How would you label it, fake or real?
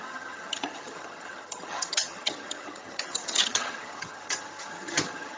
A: fake